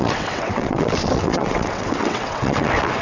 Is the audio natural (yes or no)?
no